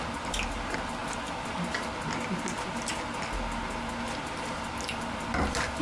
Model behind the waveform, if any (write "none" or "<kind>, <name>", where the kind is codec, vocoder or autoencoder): none